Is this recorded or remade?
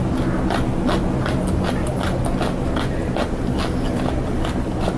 recorded